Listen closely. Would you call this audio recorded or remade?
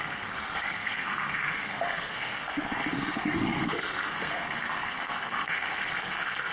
remade